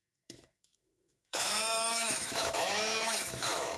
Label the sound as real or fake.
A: fake